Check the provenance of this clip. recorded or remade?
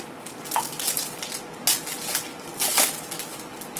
recorded